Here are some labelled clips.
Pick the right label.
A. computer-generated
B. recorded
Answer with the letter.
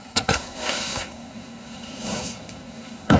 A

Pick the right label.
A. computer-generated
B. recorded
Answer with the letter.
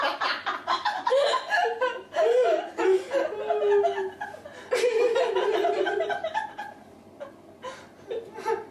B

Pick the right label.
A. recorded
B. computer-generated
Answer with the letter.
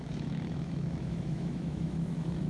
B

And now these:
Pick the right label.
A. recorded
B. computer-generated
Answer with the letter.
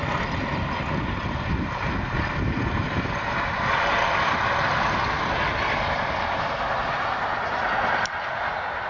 A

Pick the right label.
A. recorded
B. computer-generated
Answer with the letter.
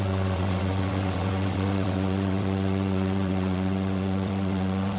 B